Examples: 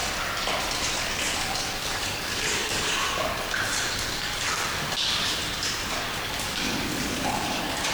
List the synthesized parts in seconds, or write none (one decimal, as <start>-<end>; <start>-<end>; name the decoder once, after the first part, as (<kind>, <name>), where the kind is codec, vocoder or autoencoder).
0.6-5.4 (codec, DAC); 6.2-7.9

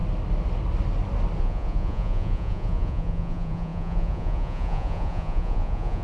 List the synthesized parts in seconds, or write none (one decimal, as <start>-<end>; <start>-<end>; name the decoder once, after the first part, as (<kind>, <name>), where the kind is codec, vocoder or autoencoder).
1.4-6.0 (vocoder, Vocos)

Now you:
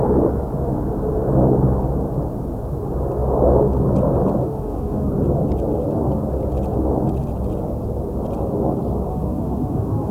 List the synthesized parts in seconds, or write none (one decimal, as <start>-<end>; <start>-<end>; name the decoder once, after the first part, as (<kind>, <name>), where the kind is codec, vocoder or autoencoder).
4.4-5.1 (autoencoder, DAC-VAE); 9.1-10.1

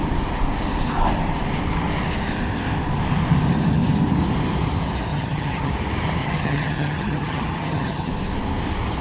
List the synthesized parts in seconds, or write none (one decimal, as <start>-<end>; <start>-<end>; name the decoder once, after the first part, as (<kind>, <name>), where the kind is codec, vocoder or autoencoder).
5.1-5.7 (vocoder, HiFi-GAN); 6.2-8.1

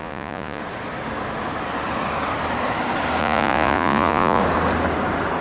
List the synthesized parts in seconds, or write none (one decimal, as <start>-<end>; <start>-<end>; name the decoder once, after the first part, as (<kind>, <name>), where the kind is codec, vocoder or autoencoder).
0.0-0.6 (vocoder, Vocos); 3.2-4.4

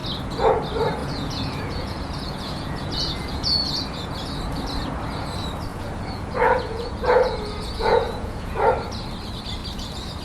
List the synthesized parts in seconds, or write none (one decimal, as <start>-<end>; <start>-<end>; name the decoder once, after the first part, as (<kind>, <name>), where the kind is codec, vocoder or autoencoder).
0.0-0.5 (vocoder, Vocos); 1.0-4.4; 5.7-8.6

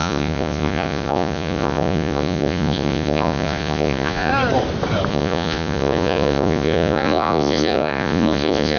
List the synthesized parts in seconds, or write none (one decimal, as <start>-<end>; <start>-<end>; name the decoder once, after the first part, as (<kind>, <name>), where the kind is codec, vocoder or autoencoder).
0.0-4.3 (vocoder, Vocos); 5.1-8.8

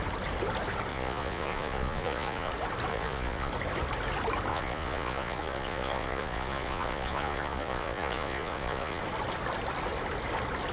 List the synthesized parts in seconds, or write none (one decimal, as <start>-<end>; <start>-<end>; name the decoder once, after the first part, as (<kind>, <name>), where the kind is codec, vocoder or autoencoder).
0.9-2.5 (vocoder, Vocos); 2.9-3.5; 4.5-9.0